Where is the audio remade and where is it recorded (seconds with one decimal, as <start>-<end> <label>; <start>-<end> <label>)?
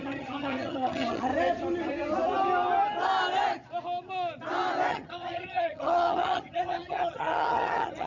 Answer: 0.0-1.3 remade; 1.3-4.9 recorded; 4.9-8.1 remade